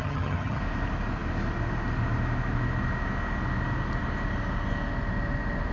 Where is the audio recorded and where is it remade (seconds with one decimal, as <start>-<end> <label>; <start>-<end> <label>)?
0.0-0.6 remade; 0.6-5.7 recorded